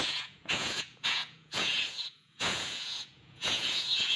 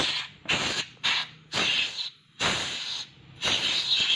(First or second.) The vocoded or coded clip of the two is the first